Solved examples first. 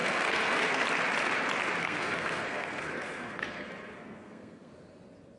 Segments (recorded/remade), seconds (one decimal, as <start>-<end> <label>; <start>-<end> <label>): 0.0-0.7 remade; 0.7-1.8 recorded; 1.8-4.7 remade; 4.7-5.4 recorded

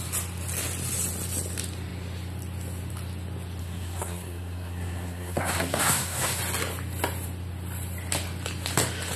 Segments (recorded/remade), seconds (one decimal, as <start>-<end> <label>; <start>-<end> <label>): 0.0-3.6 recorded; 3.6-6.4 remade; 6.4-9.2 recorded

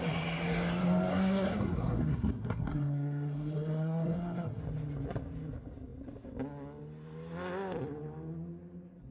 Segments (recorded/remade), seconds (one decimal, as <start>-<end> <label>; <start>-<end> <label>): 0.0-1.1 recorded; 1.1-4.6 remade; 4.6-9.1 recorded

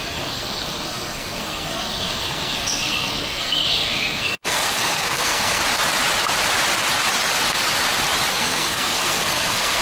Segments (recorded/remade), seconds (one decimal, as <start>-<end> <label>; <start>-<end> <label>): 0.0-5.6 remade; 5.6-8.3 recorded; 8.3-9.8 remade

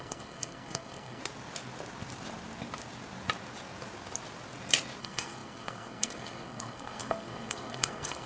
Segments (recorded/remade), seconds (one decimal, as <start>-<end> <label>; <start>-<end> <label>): 0.0-1.2 remade; 1.2-5.0 recorded; 5.0-8.3 remade

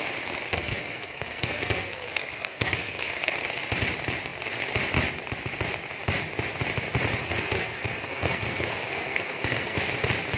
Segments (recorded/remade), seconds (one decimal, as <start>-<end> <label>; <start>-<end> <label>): 0.0-0.5 recorded; 0.5-3.3 remade; 3.3-7.2 recorded; 7.2-9.8 remade; 9.8-10.4 recorded